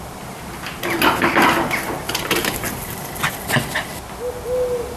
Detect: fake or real real